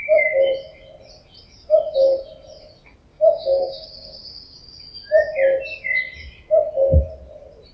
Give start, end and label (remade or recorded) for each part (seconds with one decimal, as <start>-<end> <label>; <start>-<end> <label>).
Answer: 0.0-3.1 recorded; 3.1-4.8 remade; 4.8-7.7 recorded